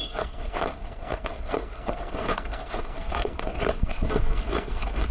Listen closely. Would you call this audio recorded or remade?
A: remade